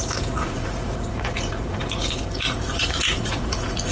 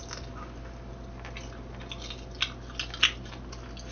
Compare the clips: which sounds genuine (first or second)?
second